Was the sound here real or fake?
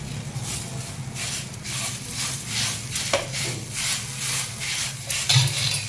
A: real